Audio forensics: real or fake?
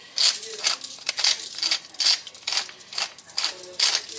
real